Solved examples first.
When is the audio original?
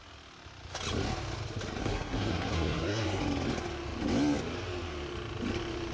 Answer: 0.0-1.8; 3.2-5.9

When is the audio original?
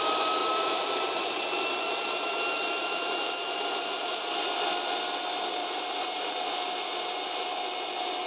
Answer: 0.0-0.4; 4.2-5.6; 6.3-8.3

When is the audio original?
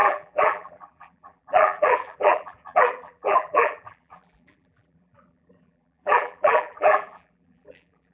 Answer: none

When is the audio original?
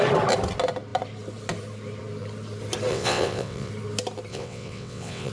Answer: 0.0-2.9; 3.7-4.3